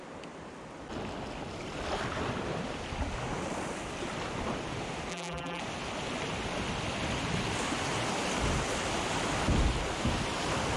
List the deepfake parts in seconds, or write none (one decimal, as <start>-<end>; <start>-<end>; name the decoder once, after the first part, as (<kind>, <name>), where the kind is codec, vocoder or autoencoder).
5.1-5.6 (vocoder, BigVGAN v2)